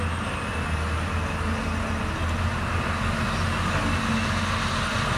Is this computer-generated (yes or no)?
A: no